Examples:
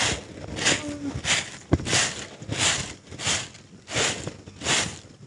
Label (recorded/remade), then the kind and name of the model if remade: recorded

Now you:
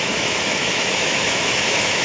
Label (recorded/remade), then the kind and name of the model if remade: remade, autoencoder, DAC-VAE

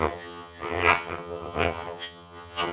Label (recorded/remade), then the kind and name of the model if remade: remade, vocoder, HiFi-GAN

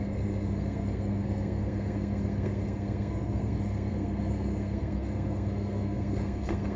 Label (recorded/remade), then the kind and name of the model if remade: remade, codec, SNAC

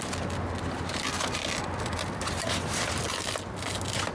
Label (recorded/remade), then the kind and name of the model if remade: recorded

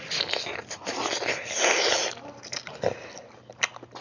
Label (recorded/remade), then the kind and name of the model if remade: recorded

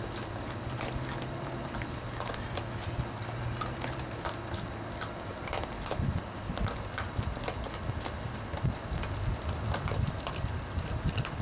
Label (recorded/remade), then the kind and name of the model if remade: recorded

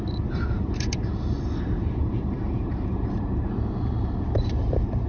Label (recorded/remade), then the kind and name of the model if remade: remade, vocoder, BigVGAN v2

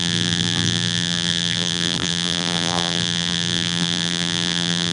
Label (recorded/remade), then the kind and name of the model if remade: remade, vocoder, BigVGAN v2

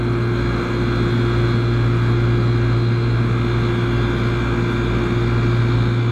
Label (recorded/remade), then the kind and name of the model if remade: recorded